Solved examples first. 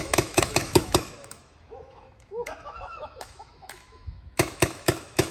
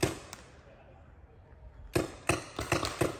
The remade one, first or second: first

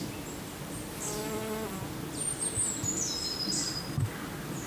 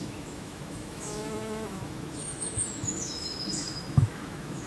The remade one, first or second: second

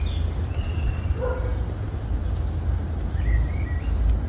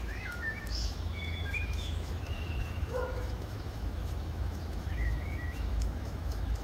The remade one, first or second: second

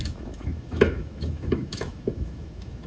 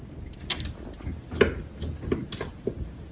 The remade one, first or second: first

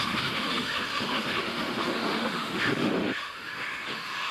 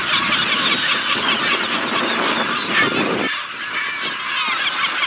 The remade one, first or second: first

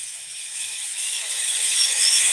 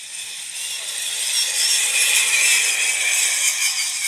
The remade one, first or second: first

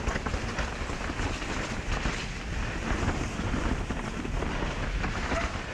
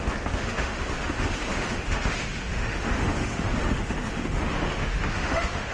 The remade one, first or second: second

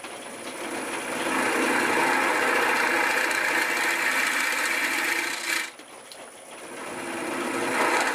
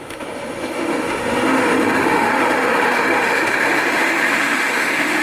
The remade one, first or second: second